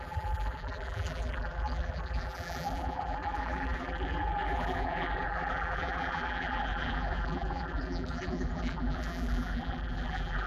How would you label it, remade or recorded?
remade